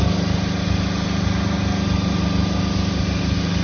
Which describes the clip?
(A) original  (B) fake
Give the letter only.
A